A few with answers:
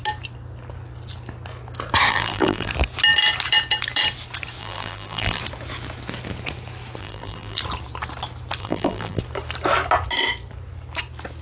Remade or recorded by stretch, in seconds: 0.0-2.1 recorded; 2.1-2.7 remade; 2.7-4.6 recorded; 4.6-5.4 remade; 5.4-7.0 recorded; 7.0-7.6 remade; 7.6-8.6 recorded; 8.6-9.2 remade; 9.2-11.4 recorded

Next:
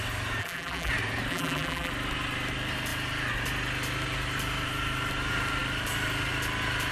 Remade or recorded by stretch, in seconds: 0.0-0.4 recorded; 0.4-0.9 remade; 0.9-1.3 recorded; 1.3-1.9 remade; 1.9-6.9 recorded

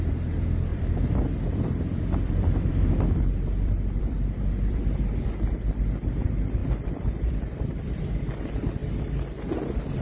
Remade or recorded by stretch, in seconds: 0.0-0.7 recorded; 0.7-4.8 remade; 4.8-6.6 recorded; 6.6-8.0 remade; 8.0-10.0 recorded

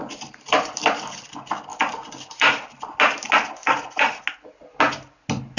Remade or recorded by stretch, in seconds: 0.0-0.7 remade; 0.7-1.7 recorded; 1.7-2.9 remade; 2.9-3.6 recorded; 3.6-4.2 remade; 4.2-5.6 recorded

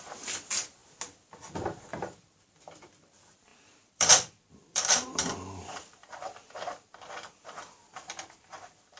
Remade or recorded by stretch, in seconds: 0.0-0.8 remade; 0.8-1.9 recorded; 1.9-9.0 remade

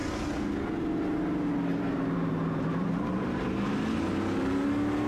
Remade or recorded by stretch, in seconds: 0.0-1.7 recorded; 1.7-3.3 remade; 3.3-5.1 recorded

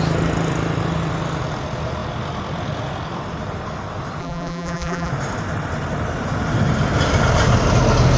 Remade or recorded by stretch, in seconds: 0.0-4.2 recorded; 4.2-5.1 remade; 5.1-8.2 recorded

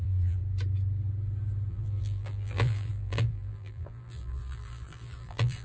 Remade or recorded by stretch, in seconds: 0.0-0.4 remade; 0.4-1.7 recorded; 1.7-5.6 remade